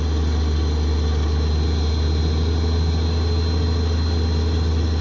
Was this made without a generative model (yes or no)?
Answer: yes